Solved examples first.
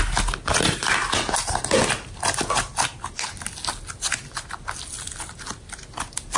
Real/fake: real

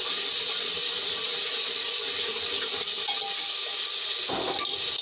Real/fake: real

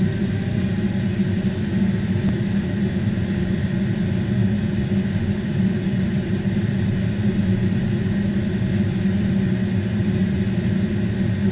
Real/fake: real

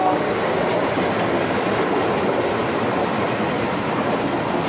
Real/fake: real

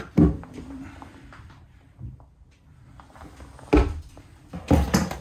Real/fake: real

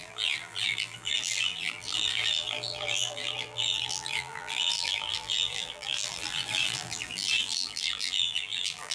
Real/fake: fake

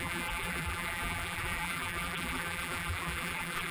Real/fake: fake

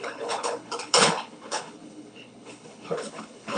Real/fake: fake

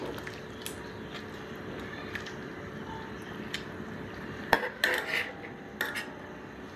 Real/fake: real